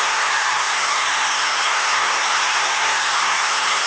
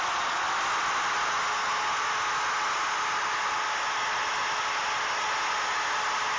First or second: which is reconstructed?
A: first